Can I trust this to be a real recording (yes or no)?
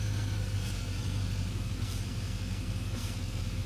no